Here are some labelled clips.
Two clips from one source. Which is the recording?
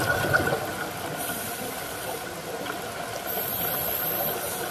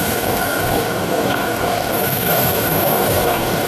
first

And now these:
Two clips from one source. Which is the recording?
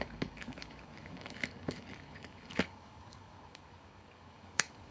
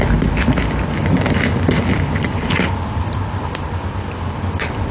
second